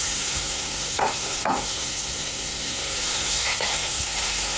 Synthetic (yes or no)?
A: yes